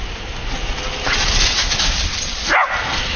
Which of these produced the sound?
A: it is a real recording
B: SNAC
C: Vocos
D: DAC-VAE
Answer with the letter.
A